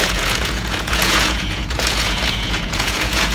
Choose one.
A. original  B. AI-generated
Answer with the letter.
B